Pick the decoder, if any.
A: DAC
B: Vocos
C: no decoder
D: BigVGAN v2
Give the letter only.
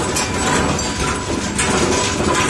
C